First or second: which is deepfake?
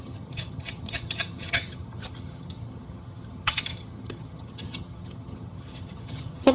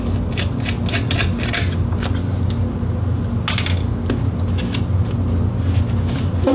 first